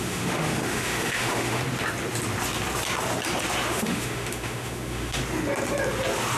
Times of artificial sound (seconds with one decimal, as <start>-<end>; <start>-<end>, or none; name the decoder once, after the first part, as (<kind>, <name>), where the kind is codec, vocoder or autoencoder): 0.0-1.6 (autoencoder, DAC-VAE); 3.7-5.2